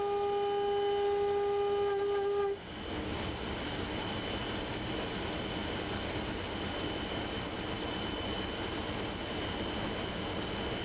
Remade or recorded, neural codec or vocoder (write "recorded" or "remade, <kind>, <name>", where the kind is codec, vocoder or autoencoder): recorded